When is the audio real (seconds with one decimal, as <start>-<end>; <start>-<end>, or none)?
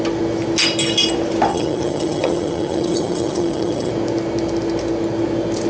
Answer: 0.0-1.5; 3.9-5.7